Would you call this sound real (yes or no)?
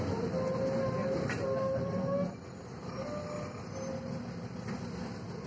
yes